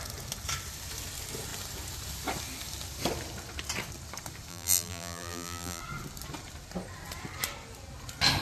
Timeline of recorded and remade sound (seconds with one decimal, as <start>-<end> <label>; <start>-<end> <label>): 0.0-4.5 recorded; 4.5-5.8 remade; 5.8-8.4 recorded